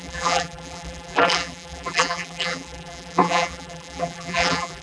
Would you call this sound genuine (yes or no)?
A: no